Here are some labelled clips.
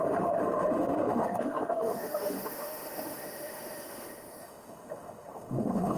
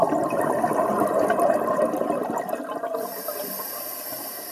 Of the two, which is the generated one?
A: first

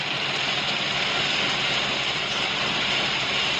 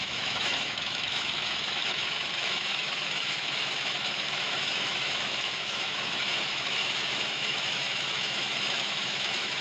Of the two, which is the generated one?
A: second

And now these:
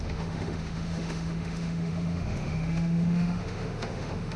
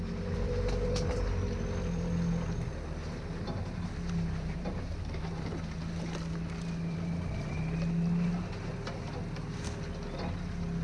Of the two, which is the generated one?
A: first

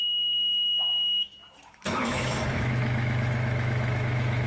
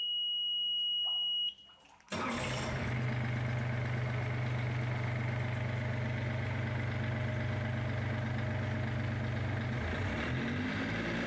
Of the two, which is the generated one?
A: first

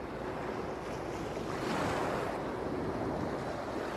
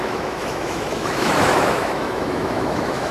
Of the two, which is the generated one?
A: second